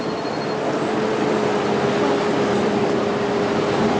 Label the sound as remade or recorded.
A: recorded